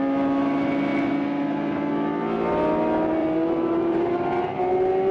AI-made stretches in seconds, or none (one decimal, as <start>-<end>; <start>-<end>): 3.2-4.1